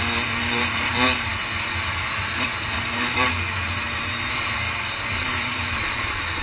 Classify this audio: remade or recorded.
remade